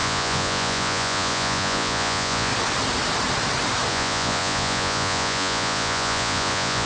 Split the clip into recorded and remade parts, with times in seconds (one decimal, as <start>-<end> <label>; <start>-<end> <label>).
0.0-2.5 remade; 2.5-3.9 recorded; 3.9-6.9 remade